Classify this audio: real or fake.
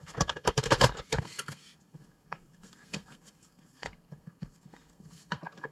fake